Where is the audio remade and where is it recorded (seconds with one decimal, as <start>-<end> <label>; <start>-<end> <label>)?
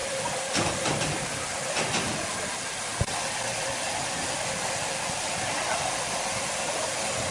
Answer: 0.0-7.3 recorded